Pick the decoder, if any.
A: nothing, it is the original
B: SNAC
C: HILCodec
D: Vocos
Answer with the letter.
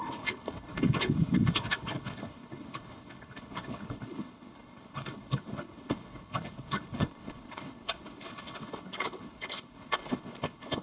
C